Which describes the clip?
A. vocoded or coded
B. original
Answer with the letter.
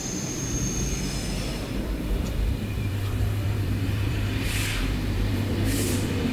A